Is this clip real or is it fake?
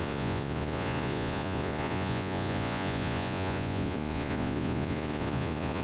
fake